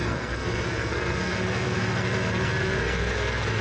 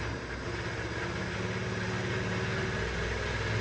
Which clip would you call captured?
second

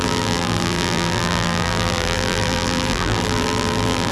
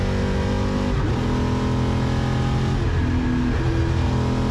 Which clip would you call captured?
second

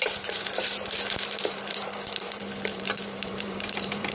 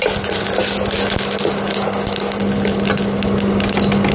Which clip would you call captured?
second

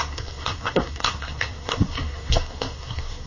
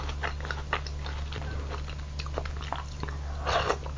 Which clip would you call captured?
second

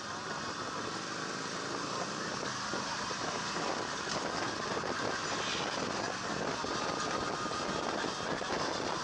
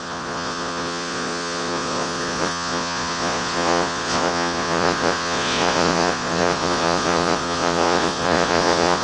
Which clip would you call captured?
first